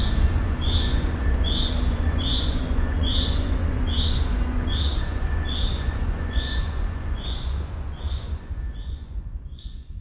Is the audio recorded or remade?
remade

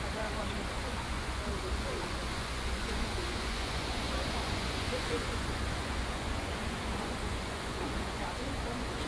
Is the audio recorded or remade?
remade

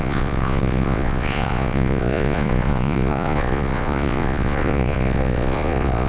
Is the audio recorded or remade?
remade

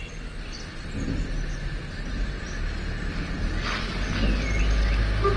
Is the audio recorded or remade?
recorded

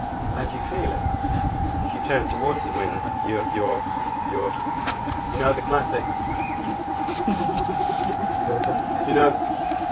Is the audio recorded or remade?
remade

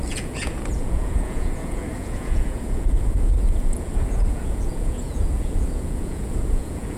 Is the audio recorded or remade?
remade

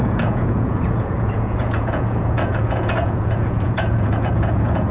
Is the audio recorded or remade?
remade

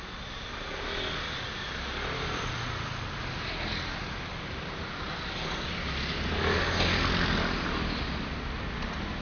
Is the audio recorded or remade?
recorded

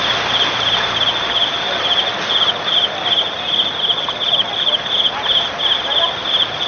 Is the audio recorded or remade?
recorded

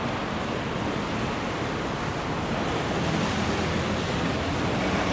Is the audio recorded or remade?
recorded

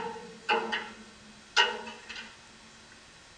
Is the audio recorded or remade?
recorded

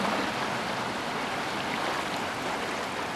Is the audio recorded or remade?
recorded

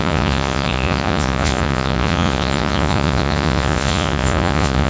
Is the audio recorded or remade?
remade